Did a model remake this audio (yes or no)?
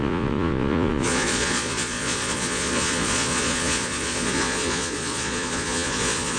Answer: yes